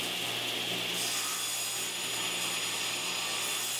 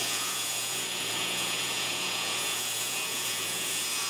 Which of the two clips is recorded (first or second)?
first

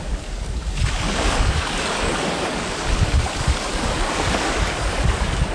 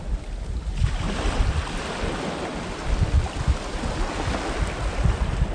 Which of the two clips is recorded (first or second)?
second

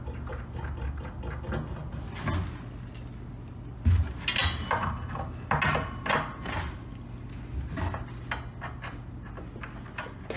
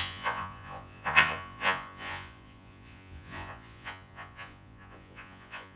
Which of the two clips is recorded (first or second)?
first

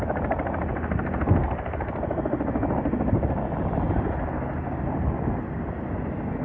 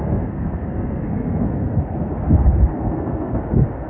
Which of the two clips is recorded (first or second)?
first